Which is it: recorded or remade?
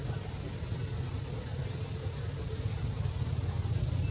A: recorded